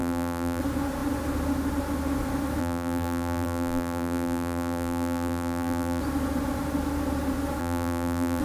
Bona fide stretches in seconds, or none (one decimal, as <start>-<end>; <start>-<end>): 0.6-2.6; 6.0-7.6